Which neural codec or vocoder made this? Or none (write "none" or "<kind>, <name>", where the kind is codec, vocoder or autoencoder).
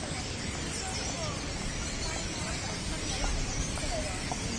none